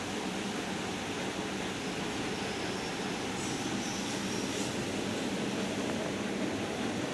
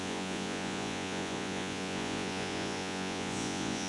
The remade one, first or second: second